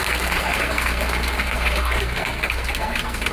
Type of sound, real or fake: fake